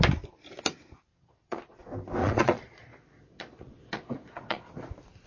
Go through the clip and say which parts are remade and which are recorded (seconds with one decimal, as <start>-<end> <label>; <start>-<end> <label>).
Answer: 0.0-1.1 recorded; 1.1-1.8 remade; 1.8-2.2 recorded; 2.2-4.6 remade; 4.6-5.3 recorded